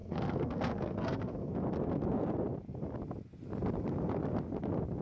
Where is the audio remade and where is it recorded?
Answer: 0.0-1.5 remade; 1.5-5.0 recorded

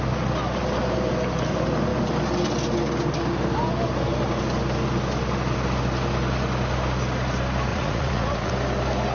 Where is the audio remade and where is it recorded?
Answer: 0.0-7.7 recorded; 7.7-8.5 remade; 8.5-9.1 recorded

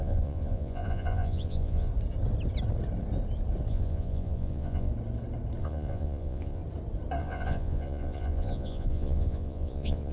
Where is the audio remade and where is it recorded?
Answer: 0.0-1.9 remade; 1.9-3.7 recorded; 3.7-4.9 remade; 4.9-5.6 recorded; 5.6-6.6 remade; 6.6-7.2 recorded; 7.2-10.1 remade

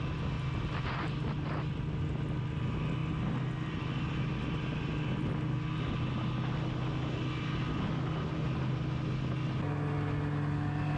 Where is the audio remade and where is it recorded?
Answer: 0.0-11.0 recorded

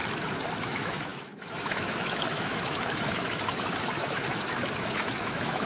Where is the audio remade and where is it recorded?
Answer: 0.0-0.6 recorded; 0.6-5.7 remade